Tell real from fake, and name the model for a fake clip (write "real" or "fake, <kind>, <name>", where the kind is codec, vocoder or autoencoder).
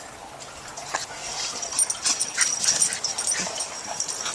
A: real